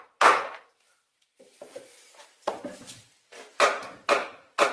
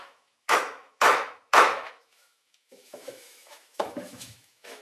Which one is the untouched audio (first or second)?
first